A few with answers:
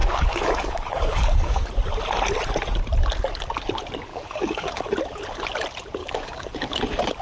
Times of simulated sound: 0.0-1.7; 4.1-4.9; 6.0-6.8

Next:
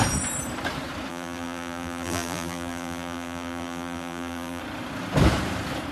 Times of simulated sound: 1.1-4.6

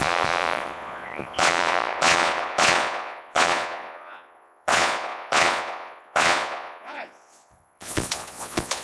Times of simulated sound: 0.0-8.8

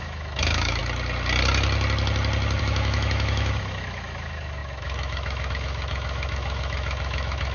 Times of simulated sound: 0.0-0.8; 2.6-7.5

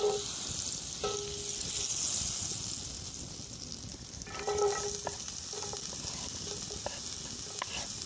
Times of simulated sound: 3.9-4.6

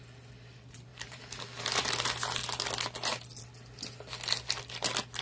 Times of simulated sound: 0.9-1.4